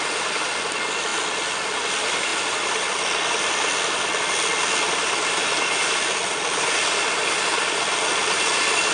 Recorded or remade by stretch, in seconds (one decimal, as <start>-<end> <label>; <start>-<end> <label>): 0.0-8.9 remade